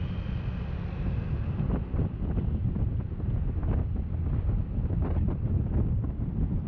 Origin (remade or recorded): recorded